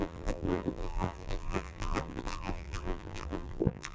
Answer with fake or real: fake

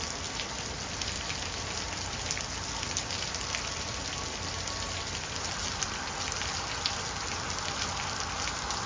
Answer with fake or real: real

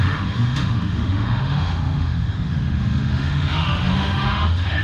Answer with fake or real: fake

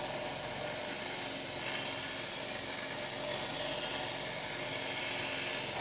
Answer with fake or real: real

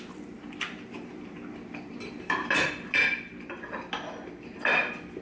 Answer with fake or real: fake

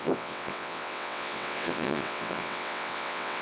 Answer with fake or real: fake